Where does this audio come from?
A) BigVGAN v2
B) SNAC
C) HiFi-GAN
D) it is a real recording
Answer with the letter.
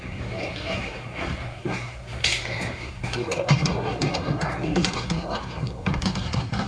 B